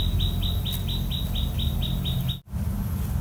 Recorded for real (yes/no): yes